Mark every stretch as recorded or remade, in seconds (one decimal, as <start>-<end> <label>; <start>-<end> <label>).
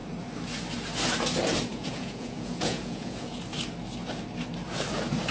0.0-1.7 recorded; 1.7-3.4 remade; 3.4-5.3 recorded